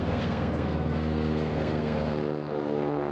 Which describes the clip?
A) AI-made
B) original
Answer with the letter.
A